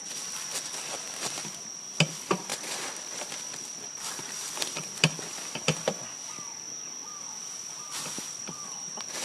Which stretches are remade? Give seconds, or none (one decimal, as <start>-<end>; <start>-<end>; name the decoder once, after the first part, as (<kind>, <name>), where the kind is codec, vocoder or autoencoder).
2.5-6.1 (vocoder, BigVGAN v2)